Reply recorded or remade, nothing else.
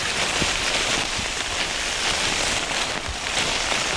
recorded